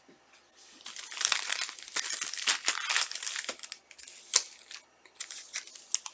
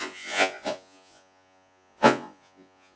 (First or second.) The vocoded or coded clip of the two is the second